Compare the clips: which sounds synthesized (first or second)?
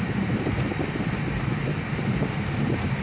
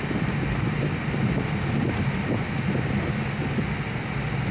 first